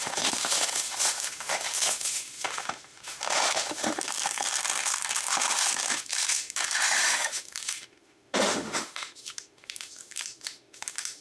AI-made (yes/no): yes